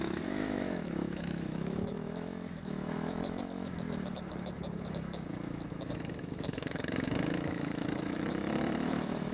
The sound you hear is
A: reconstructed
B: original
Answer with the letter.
A